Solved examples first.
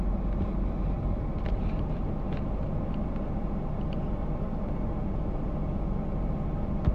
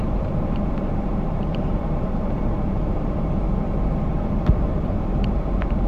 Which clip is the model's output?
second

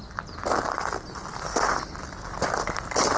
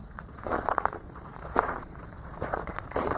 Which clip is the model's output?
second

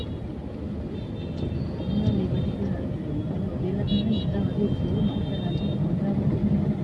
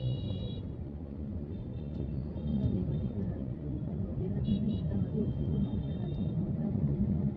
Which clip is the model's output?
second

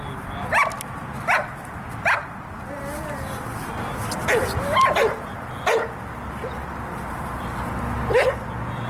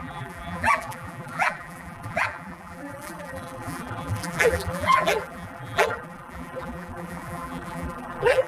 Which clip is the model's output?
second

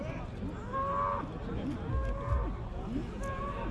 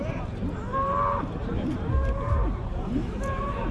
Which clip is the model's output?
second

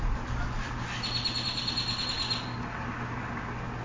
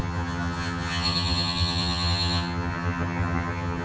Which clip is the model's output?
second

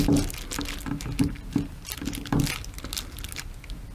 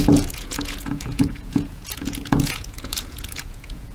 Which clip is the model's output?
second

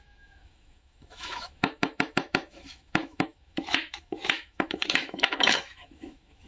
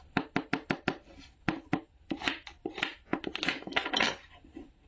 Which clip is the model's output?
first